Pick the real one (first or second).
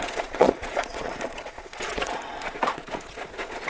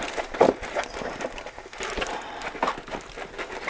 second